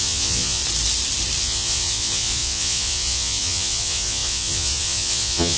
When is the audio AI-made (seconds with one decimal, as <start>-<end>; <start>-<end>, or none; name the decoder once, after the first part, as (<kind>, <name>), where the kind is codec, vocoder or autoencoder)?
0.0-0.6 (vocoder, Vocos); 1.4-5.6